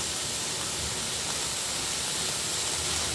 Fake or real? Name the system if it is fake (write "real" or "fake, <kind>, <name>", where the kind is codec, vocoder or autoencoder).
real